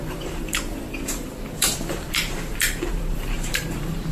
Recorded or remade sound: remade